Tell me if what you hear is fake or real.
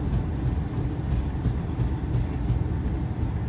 real